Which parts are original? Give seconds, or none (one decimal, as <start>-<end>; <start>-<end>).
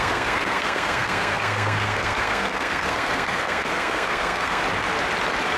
4.6-5.6